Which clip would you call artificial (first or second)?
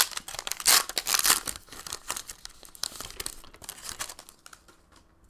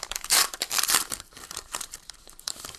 second